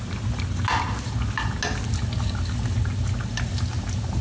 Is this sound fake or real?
real